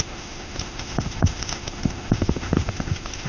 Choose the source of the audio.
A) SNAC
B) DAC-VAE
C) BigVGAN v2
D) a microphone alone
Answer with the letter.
B